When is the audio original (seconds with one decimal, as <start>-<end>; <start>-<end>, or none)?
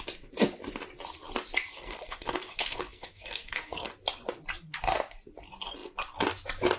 0.0-1.7; 3.9-6.8